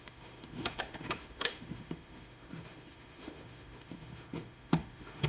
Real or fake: fake